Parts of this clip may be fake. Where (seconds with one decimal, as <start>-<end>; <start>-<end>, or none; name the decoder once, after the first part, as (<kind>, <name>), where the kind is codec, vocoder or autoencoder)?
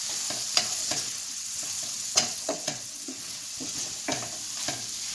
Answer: 0.8-3.9 (vocoder, WaveNeXt)